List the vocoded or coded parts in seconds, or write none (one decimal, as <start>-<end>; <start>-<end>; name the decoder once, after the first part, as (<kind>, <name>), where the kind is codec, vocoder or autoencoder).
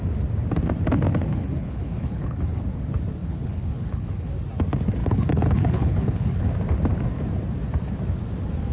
1.3-2.6 (codec, HILCodec); 3.2-4.3; 5.0-6.5